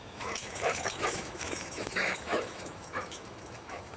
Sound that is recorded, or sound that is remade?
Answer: remade